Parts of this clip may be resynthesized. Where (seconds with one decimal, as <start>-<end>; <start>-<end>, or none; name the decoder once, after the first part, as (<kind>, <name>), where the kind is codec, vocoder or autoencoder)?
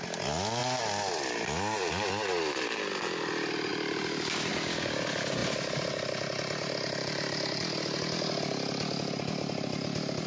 none